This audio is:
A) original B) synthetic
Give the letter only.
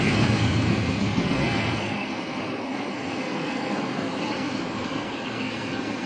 B